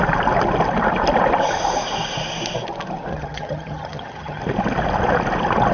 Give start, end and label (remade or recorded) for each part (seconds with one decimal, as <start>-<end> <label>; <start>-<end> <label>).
0.0-3.1 recorded; 3.1-4.4 remade; 4.4-5.7 recorded